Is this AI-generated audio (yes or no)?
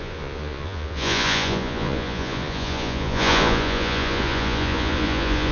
yes